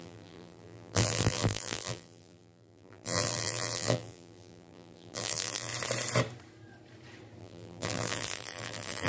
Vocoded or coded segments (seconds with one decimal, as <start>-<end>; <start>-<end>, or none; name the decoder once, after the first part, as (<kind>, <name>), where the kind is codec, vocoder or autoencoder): 0.0-5.7 (vocoder, BigVGAN v2); 7.4-9.1